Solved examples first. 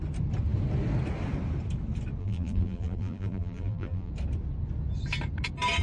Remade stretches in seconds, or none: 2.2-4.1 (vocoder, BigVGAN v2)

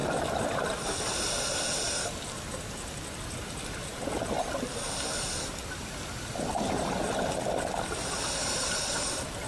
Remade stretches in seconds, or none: none

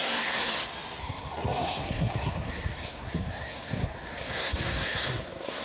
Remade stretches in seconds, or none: 0.0-0.5 (codec, SNAC); 1.0-5.6

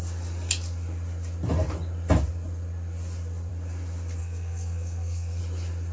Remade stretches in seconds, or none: 4.2-5.4 (codec, SNAC)

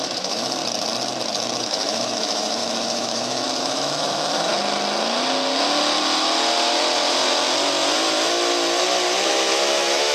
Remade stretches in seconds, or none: 0.0-0.6 (autoencoder, DAC-VAE); 1.6-4.5; 9.3-10.1

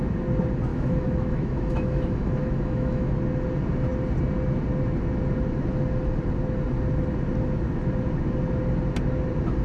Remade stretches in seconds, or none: 0.7-3.1 (autoencoder, DAC-VAE)